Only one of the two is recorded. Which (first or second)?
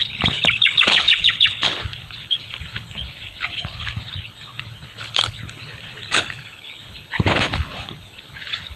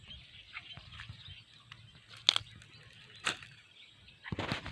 second